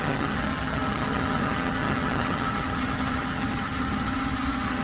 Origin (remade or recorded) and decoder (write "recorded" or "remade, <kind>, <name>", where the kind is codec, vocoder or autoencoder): remade, vocoder, HiFi-GAN